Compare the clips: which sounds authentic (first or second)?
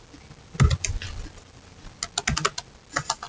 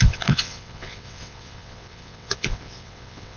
first